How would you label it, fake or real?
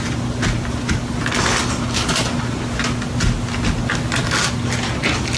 real